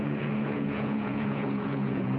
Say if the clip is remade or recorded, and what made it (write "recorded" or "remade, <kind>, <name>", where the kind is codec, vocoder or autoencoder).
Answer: remade, vocoder, Vocos